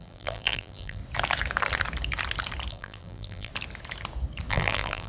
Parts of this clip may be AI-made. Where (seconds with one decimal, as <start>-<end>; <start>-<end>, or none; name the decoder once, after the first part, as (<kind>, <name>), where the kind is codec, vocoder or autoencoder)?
0.0-1.0 (vocoder, BigVGAN v2); 2.7-3.5; 4.5-5.1